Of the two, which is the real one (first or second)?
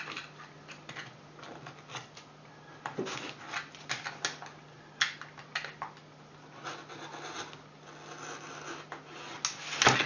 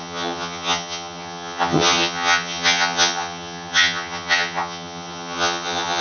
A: first